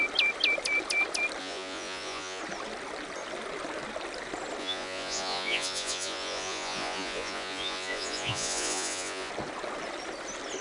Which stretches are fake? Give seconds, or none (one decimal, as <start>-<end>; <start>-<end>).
1.4-2.4; 4.6-9.3